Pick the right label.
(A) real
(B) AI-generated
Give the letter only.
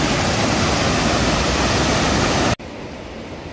A